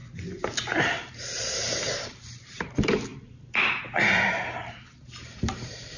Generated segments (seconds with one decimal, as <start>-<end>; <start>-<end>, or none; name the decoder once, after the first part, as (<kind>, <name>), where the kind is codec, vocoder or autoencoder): 1.1-3.1 (vocoder, BigVGAN v2); 3.8-6.0